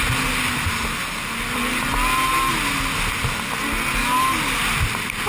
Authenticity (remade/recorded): recorded